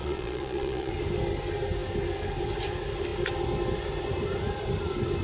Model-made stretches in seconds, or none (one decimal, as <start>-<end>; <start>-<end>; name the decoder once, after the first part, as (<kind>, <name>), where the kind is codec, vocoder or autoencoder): 0.0-0.9 (vocoder, Vocos)